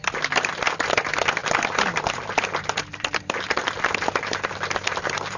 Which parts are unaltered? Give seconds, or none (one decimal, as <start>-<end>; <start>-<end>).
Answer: none